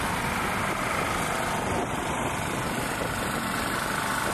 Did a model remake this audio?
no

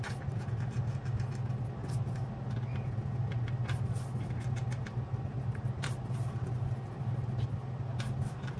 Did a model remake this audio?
no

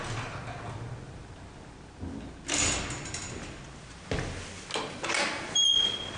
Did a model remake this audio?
no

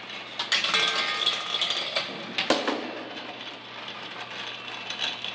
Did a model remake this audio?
no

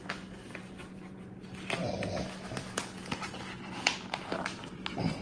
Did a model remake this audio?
no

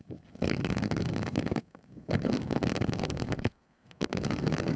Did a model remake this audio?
yes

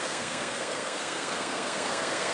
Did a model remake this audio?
yes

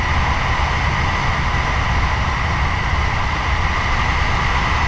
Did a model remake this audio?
no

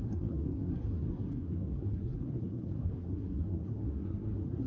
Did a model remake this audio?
yes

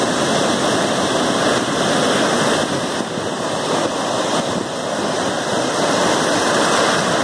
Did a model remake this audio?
no